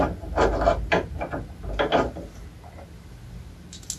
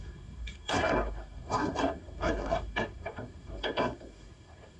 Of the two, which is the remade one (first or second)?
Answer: second